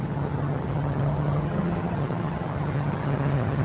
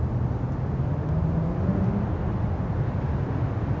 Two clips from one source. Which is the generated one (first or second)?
first